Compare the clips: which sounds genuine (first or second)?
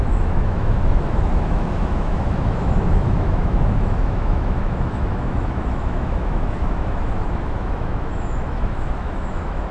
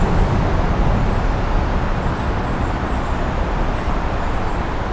second